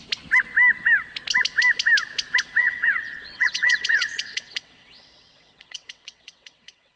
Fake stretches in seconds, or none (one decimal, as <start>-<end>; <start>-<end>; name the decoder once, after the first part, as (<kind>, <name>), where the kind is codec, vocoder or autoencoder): 2.6-7.0 (vocoder, WaveNeXt)